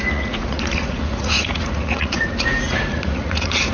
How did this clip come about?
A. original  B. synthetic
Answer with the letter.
B